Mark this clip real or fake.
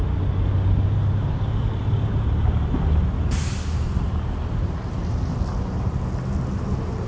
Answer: real